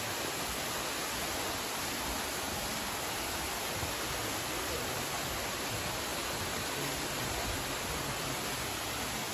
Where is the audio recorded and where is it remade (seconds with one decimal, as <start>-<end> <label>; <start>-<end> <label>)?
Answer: 0.0-9.3 recorded